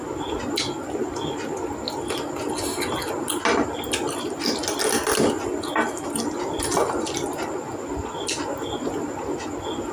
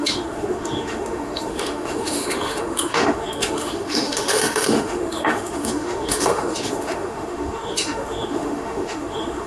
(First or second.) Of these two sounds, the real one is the first